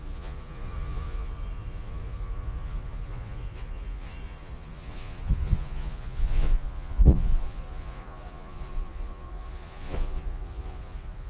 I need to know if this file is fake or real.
fake